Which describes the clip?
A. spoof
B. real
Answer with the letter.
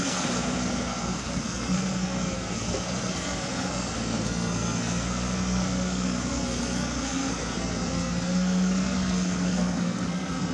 A